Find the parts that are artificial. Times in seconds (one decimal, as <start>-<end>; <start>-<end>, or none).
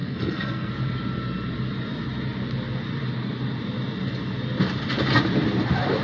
0.0-0.7